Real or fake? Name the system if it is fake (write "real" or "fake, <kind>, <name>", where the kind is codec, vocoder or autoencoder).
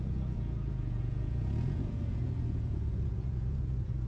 fake, vocoder, Vocos